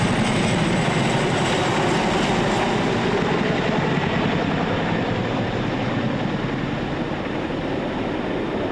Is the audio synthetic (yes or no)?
no